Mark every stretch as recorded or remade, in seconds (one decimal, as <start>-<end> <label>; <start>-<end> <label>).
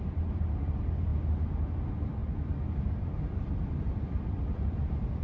0.0-1.1 remade; 1.1-1.7 recorded; 1.7-2.2 remade; 2.2-3.2 recorded; 3.2-5.2 remade